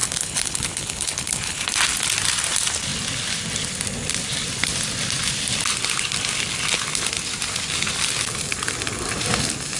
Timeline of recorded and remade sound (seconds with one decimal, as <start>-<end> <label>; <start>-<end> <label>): 0.0-1.7 remade; 1.7-9.8 recorded